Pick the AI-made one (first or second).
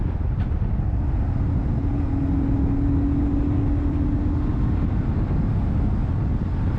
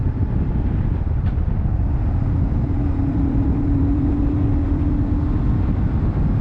second